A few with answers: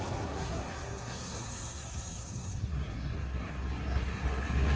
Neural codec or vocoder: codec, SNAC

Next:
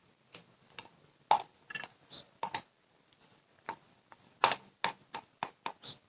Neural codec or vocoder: none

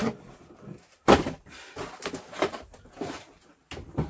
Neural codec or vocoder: none